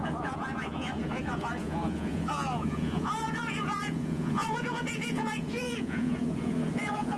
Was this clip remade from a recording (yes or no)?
yes